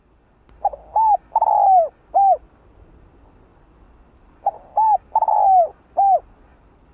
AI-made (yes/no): no